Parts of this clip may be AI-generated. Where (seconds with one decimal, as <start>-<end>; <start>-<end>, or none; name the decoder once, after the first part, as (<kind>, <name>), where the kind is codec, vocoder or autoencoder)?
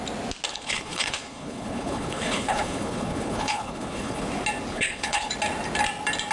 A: 0.5-4.3 (codec, HILCodec); 4.7-5.3